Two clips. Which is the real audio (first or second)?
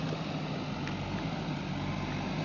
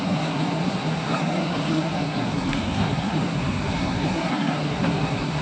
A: first